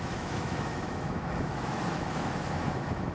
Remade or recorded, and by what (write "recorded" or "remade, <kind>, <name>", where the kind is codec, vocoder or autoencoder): remade, autoencoder, DAC-VAE